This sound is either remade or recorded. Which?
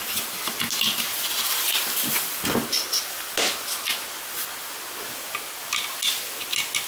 recorded